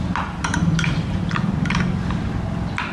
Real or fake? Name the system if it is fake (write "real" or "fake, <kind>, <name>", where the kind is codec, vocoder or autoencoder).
real